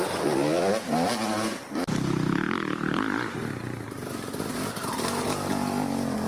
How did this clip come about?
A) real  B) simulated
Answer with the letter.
A